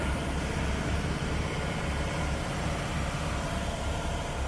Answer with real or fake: fake